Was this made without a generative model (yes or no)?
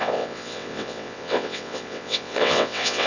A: no